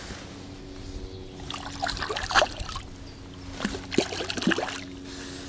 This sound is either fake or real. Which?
real